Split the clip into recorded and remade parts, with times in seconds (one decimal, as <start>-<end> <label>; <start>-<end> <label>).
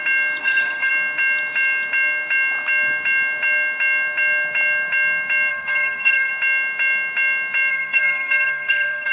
0.0-0.4 recorded; 0.4-0.9 remade; 0.9-5.5 recorded; 5.5-6.3 remade; 6.3-7.7 recorded; 7.7-9.1 remade